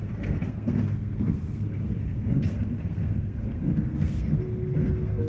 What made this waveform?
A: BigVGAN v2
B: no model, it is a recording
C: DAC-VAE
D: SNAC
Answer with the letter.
D